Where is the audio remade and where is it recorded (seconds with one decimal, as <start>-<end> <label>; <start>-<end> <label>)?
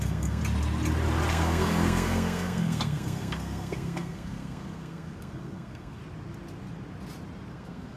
0.0-0.4 remade; 0.4-1.3 recorded; 1.3-6.0 remade; 6.0-7.5 recorded; 7.5-8.0 remade